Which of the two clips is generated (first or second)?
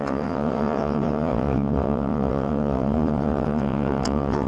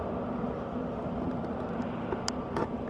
first